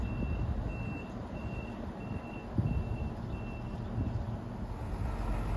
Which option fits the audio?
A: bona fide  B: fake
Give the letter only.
A